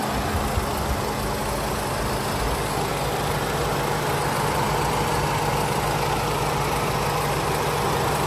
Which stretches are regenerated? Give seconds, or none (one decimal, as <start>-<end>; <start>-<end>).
none